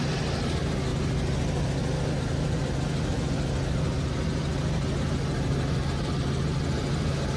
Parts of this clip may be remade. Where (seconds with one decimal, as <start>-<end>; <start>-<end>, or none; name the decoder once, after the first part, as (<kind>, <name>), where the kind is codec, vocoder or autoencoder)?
none